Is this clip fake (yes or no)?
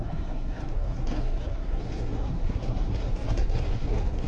yes